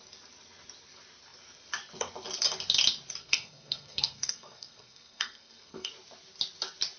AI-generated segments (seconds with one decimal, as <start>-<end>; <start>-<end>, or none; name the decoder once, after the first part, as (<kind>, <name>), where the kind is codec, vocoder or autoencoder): 3.2-5.9 (codec, SNAC)